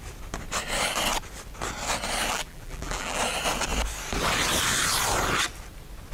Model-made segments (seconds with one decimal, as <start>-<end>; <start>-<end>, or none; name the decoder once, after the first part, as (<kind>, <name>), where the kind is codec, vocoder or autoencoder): 2.3-3.2 (vocoder, BigVGAN v2)